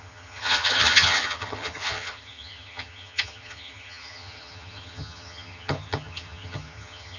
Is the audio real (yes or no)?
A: no